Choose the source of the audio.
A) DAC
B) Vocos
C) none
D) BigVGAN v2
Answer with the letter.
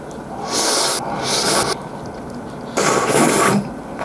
D